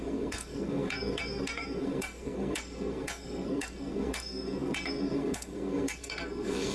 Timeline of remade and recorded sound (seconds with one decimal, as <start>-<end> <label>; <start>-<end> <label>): 0.0-6.7 remade